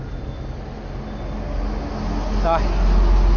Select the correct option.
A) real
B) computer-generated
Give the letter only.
A